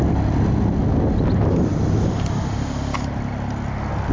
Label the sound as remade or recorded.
recorded